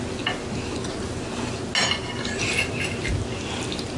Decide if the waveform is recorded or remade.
recorded